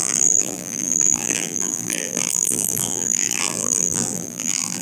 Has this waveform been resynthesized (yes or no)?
yes